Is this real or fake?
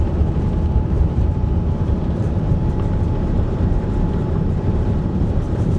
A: fake